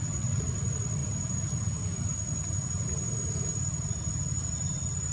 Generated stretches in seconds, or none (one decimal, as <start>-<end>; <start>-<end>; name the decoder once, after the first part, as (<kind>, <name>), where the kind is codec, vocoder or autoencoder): 1.0-4.1 (vocoder, Vocos)